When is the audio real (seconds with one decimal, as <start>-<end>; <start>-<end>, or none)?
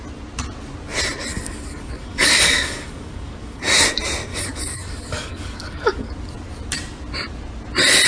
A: 0.0-1.3; 3.6-4.3; 6.1-8.1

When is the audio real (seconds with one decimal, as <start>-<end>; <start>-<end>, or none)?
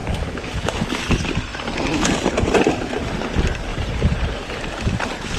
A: 0.8-3.7; 4.5-5.4